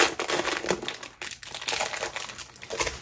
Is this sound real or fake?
real